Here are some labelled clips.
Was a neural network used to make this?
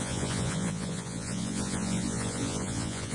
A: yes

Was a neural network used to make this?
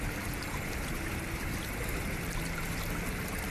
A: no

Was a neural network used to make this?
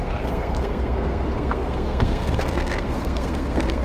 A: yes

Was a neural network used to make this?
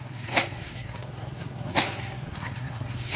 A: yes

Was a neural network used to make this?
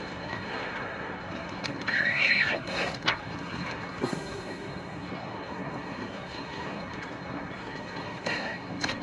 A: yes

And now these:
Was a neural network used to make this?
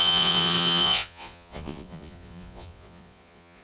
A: yes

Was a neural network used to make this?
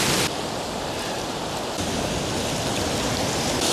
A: no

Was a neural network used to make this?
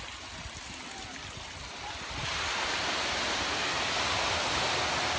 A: no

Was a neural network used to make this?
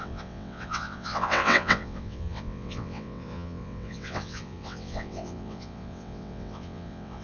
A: yes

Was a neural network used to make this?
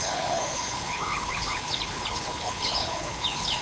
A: yes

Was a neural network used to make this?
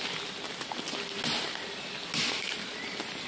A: no